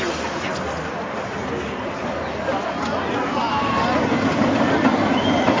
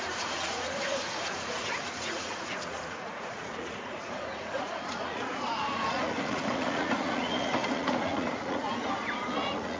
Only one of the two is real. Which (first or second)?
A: first